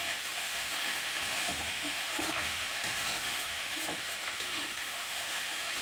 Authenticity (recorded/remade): remade